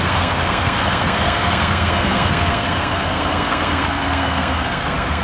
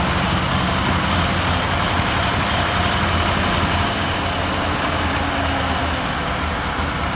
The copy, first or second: first